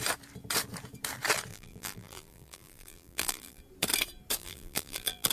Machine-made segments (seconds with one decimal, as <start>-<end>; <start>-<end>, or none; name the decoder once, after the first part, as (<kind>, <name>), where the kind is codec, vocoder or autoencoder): 1.5-3.6 (vocoder, BigVGAN v2); 4.4-5.3